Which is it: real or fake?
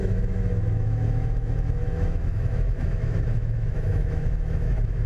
fake